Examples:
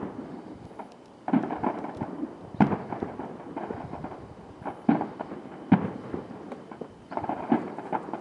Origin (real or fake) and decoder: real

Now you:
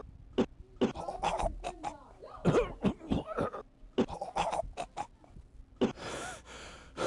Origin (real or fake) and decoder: real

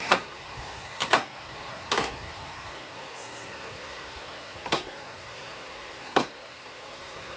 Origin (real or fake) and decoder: fake, codec, SNAC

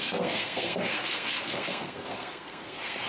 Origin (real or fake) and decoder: fake, codec, SNAC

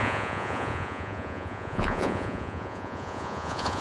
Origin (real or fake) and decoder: fake, vocoder, Vocos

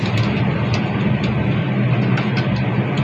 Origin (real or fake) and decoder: real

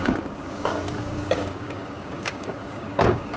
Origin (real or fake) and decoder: fake, codec, DAC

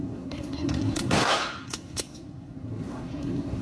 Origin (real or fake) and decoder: fake, codec, SNAC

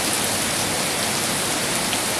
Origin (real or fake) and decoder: real